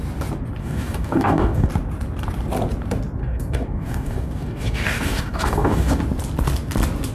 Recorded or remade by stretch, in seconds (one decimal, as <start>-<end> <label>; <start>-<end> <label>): 0.0-0.6 recorded; 0.6-1.7 remade; 1.7-3.2 recorded; 3.2-6.0 remade; 6.0-7.1 recorded